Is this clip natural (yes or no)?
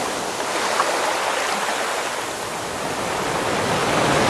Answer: yes